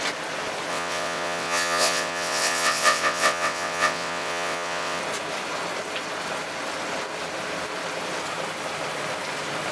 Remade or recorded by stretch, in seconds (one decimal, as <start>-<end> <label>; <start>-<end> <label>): 0.0-0.7 recorded; 0.7-5.0 remade; 5.0-9.7 recorded